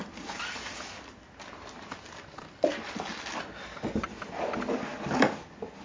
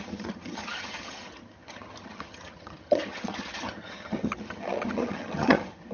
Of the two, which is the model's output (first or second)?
second